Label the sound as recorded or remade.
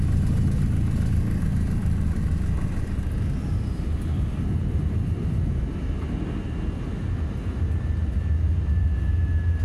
recorded